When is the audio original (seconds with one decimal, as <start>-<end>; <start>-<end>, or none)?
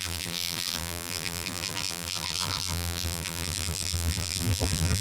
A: none